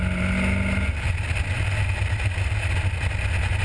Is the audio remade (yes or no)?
no